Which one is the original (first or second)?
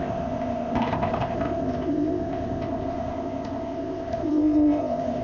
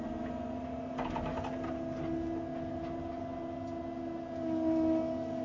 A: second